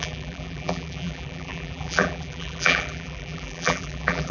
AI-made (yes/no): yes